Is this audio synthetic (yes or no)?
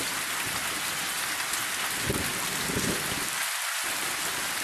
no